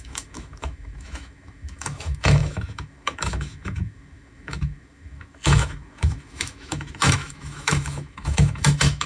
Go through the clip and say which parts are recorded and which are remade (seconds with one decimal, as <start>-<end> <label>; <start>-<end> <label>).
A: 0.0-9.1 remade